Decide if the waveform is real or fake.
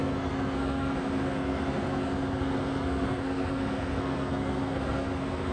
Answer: fake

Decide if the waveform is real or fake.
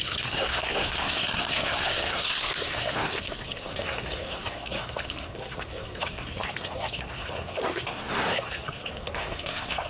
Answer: fake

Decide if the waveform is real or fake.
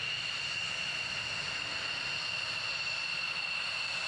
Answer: real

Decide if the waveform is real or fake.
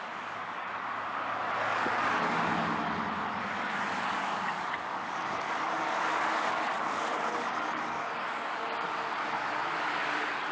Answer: fake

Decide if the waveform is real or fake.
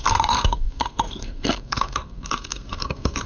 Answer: fake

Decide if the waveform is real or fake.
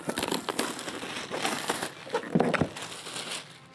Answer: real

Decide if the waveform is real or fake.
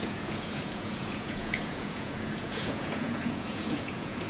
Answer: fake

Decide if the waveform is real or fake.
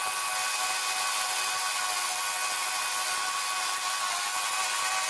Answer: real